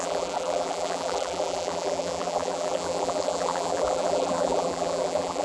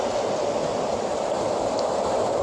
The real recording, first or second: second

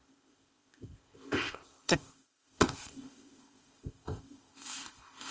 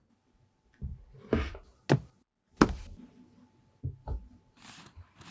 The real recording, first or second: second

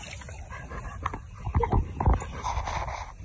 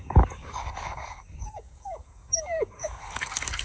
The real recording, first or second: first